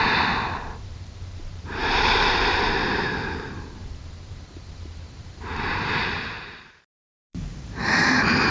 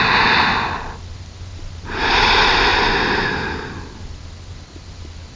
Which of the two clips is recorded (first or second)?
second